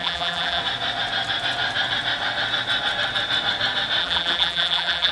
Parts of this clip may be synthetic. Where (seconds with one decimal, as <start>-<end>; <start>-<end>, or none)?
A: 0.0-0.6; 4.0-5.1